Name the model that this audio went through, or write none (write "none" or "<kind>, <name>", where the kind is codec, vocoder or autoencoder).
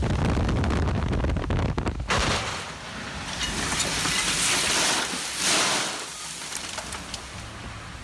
none